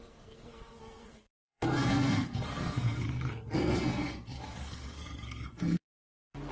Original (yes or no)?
no